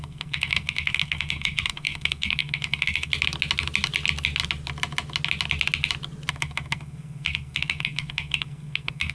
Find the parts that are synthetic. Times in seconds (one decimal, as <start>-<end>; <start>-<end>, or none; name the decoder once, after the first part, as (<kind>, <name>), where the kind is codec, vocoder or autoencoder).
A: 0.0-3.1 (codec, SNAC); 6.3-9.1